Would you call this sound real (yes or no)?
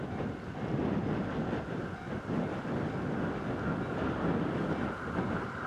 yes